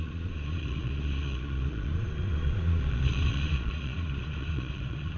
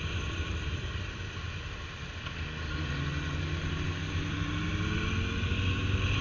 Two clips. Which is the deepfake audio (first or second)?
first